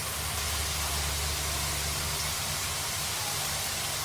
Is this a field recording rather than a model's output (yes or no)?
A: yes